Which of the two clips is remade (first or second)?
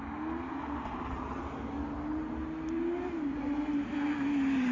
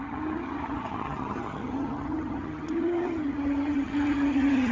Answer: second